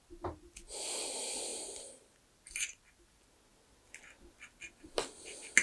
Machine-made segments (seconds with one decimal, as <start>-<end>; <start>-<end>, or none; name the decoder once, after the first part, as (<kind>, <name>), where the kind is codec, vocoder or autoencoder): none